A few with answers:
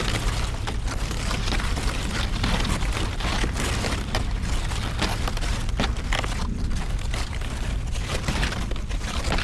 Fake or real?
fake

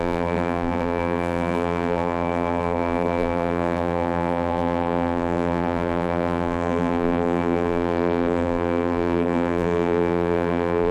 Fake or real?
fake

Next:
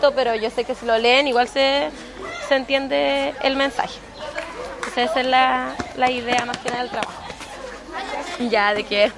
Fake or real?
real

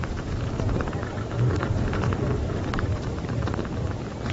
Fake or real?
fake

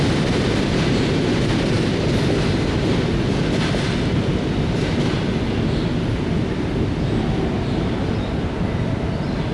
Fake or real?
real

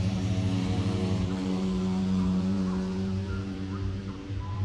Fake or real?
fake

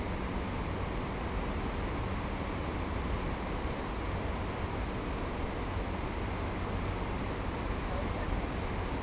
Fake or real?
real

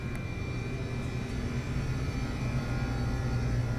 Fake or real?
real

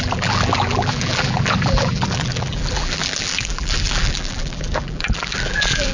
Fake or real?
fake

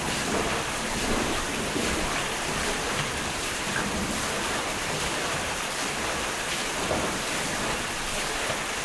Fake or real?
fake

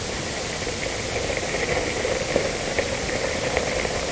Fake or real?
real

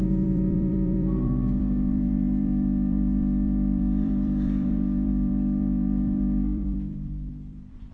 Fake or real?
fake